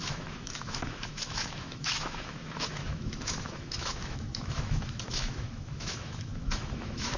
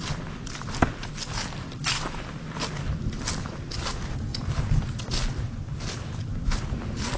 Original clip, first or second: second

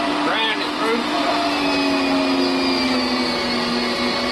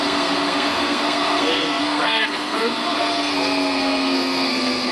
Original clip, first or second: first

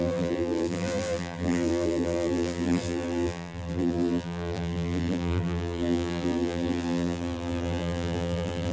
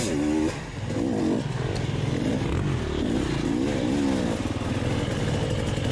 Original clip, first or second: second